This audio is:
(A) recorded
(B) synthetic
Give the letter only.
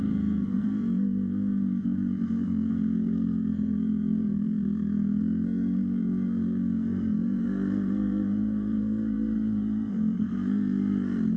B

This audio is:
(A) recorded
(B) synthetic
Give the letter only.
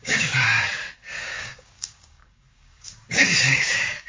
B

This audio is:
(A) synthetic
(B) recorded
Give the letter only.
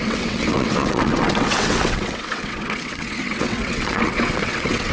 A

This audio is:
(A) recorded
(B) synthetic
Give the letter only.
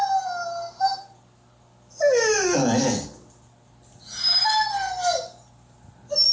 A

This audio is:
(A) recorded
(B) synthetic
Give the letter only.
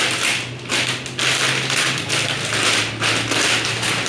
A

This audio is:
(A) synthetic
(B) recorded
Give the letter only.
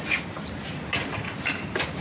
B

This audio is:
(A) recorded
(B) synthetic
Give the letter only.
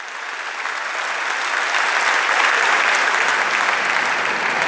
A